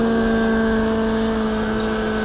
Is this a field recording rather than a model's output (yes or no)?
yes